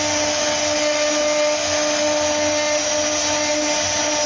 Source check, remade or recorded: recorded